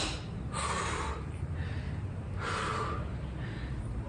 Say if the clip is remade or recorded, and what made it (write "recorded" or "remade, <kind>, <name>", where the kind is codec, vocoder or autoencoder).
recorded